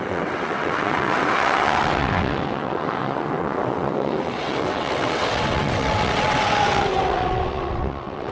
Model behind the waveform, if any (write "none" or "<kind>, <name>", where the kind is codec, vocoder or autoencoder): vocoder, WaveNeXt